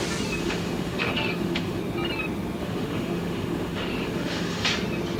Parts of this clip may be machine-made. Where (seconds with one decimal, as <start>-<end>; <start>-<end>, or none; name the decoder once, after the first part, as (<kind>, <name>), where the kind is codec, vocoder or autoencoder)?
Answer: 0.4-1.8 (autoencoder, DAC-VAE); 2.6-4.7

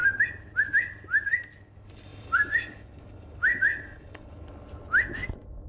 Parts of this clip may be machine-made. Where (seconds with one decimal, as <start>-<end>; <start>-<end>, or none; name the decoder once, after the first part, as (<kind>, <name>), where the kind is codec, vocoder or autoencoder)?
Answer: 0.0-1.5 (vocoder, BigVGAN v2); 2.1-4.5

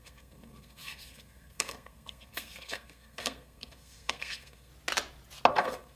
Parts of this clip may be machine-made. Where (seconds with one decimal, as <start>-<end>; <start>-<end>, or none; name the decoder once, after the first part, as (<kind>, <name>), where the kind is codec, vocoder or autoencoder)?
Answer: 0.0-4.7 (codec, SNAC); 5.5-6.0

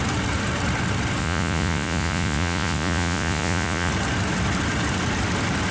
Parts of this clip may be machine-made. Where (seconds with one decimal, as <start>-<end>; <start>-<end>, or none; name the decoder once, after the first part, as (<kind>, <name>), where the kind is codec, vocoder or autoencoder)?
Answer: 1.2-3.9 (vocoder, Vocos)

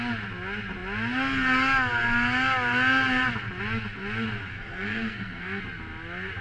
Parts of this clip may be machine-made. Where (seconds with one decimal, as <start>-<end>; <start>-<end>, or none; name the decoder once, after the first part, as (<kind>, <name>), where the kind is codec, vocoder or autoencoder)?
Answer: 4.5-5.6 (codec, SNAC)

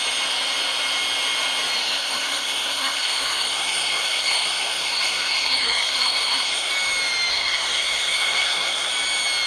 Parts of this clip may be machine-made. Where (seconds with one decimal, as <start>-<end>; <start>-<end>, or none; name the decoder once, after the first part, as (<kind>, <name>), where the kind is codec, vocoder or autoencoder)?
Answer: 1.8-6.7 (codec, SNAC); 7.3-8.9

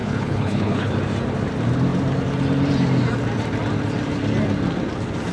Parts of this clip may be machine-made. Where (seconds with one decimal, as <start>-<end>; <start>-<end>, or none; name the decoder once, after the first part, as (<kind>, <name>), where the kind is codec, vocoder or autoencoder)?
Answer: 0.0-0.9 (codec, HILCodec)

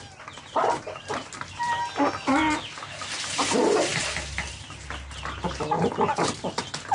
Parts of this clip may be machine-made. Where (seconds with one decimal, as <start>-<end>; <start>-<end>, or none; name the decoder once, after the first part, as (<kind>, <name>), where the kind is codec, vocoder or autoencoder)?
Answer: none